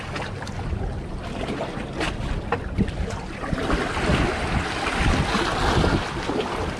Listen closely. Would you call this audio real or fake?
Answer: real